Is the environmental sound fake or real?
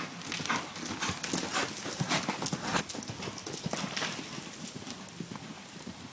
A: real